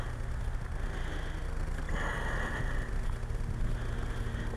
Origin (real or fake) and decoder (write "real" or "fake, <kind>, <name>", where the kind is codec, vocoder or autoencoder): real